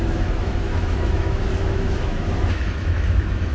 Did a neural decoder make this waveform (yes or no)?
yes